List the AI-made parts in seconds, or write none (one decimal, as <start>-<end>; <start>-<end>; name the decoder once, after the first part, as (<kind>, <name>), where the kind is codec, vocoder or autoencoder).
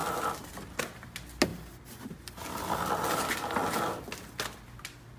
none